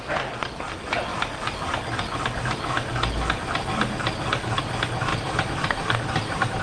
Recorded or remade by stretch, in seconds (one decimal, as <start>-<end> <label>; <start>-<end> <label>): 0.0-5.1 recorded; 5.1-6.6 remade